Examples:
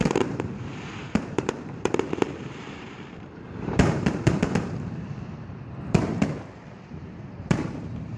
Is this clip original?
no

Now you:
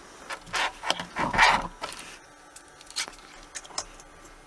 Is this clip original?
yes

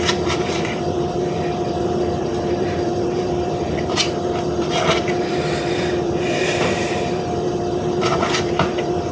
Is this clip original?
no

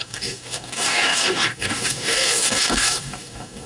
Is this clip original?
no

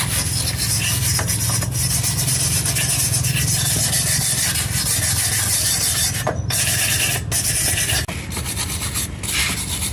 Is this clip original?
yes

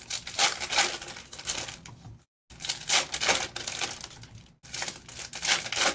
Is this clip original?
yes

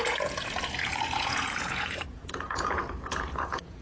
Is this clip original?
no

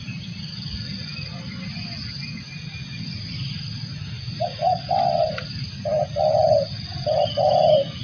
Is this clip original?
yes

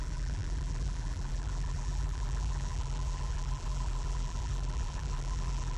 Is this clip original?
no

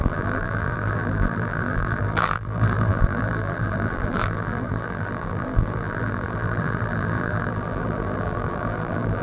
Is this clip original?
no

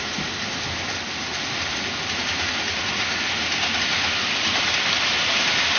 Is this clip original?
yes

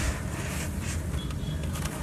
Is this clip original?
yes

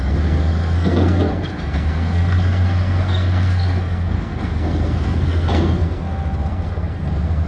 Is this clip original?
no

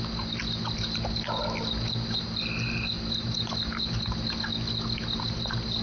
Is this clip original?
yes